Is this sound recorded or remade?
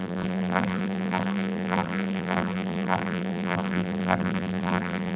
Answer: remade